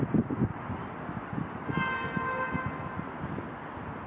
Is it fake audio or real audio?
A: real